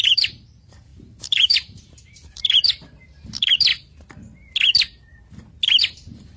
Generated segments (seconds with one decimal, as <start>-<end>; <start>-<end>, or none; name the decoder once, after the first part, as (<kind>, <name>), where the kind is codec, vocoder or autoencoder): 0.0-3.7 (vocoder, BigVGAN v2); 5.8-6.4